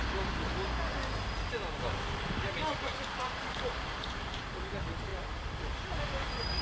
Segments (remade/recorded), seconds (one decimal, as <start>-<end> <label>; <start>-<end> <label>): 0.0-6.6 recorded